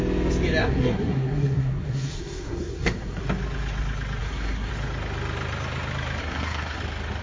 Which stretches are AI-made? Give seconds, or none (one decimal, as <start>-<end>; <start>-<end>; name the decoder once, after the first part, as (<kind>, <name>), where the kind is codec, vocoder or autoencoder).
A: 0.6-3.2 (codec, SNAC); 4.2-4.7; 6.2-6.8